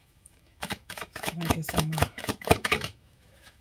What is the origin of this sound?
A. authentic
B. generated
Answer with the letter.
B